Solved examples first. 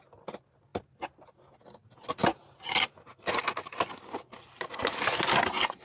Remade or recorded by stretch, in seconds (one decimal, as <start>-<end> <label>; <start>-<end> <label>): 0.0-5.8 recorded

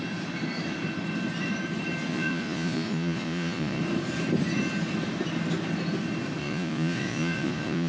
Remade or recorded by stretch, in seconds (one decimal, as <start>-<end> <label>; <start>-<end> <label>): 0.0-2.1 recorded; 2.1-3.8 remade; 3.8-6.4 recorded; 6.4-7.9 remade

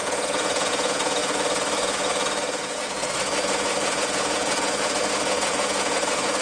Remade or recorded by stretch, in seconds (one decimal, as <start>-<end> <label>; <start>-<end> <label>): 0.0-6.4 remade